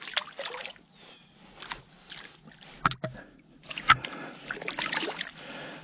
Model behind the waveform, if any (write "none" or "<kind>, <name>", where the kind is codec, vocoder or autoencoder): none